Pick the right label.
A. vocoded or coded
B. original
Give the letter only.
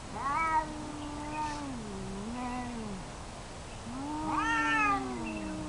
B